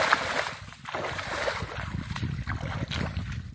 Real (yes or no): yes